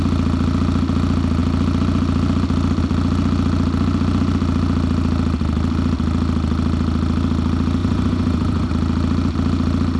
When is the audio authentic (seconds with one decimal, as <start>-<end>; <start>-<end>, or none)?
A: 0.0-7.8; 8.7-10.0